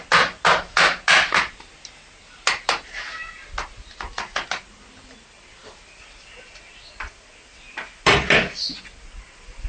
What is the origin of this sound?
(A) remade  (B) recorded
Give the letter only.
B